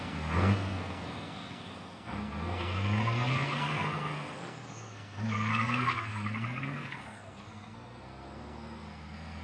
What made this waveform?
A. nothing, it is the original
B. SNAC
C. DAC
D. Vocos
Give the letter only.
B